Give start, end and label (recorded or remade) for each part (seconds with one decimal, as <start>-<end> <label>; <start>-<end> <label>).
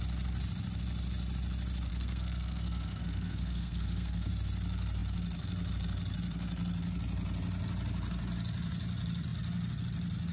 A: 0.0-1.9 recorded; 1.9-4.3 remade; 4.3-10.3 recorded